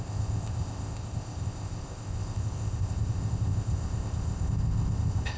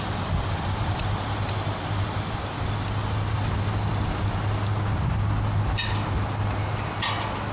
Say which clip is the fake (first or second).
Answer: first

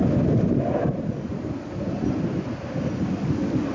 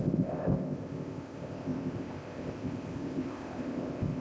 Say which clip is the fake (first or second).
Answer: second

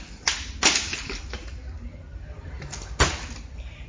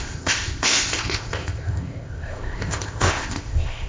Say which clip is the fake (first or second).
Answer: second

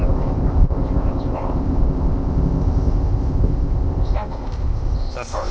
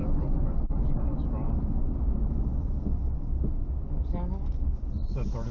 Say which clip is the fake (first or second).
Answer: first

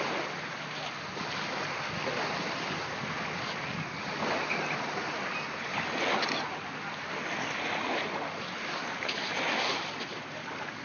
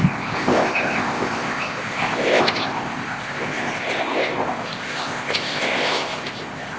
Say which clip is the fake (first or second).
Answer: second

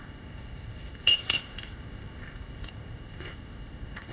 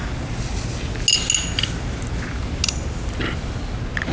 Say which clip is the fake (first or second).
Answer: first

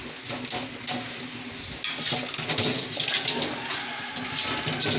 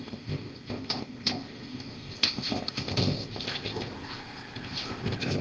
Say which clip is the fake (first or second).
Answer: second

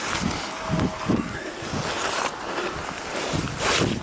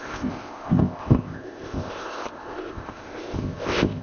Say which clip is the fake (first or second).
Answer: second